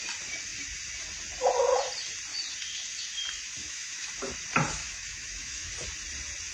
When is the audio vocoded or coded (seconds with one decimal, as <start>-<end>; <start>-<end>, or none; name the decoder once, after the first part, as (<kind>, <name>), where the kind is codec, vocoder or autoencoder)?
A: 3.6-4.1 (autoencoder, DAC-VAE); 4.8-5.7